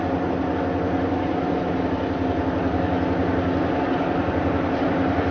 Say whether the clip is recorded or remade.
recorded